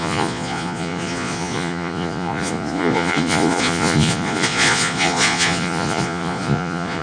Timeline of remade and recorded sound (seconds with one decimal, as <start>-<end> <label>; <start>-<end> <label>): 0.0-7.0 remade